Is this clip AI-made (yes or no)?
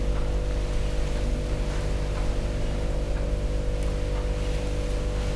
no